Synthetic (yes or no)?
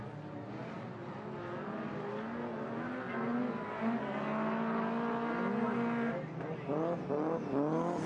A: no